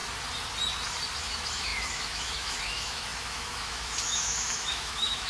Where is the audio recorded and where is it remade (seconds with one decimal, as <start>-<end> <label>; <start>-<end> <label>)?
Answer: 0.0-1.2 recorded; 1.2-5.3 remade